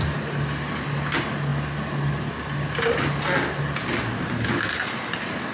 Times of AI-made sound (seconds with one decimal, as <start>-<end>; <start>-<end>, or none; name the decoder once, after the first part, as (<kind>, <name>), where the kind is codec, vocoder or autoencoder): none